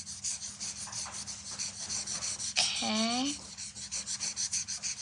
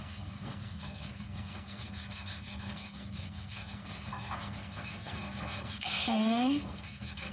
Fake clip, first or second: second